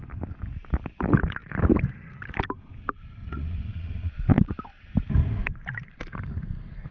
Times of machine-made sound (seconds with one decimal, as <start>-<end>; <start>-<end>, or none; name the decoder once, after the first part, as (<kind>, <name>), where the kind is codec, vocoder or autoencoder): 3.2-4.9 (vocoder, Vocos)